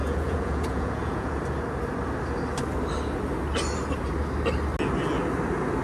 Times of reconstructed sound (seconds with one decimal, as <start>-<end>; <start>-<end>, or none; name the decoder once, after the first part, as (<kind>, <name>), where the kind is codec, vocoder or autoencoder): 0.0-1.4 (vocoder, Vocos)